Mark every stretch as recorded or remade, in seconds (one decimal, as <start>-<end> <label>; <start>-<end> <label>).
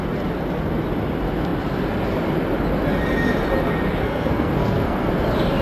0.0-4.0 recorded; 4.0-5.1 remade; 5.1-5.6 recorded